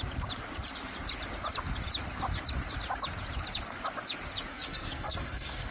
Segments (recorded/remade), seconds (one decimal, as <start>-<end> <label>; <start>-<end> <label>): 0.0-4.5 recorded; 4.5-5.7 remade